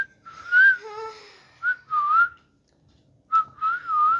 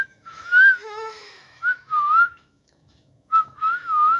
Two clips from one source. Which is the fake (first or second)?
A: second